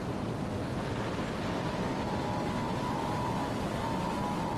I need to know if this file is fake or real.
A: real